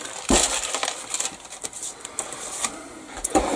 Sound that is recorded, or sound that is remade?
recorded